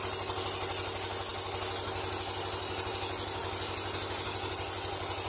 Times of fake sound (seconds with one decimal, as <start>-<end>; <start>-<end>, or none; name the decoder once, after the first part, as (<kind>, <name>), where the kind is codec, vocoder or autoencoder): none